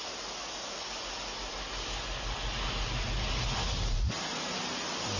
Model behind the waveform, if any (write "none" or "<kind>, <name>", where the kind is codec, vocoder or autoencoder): none